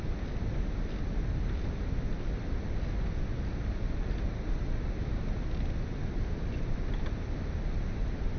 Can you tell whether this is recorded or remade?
recorded